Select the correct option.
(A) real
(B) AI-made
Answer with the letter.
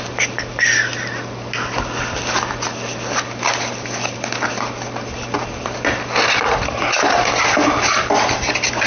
A